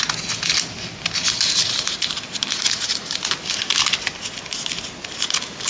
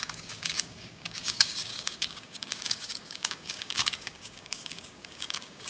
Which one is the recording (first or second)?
first